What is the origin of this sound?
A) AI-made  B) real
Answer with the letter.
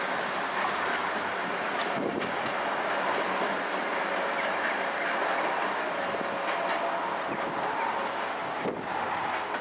B